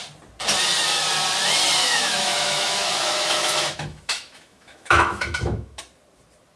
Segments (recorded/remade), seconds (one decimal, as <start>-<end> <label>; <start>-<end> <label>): 0.0-1.8 recorded; 1.8-5.8 remade; 5.8-6.6 recorded